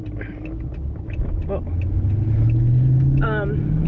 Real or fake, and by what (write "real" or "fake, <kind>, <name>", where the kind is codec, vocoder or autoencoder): real